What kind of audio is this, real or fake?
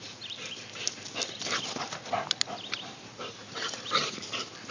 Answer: real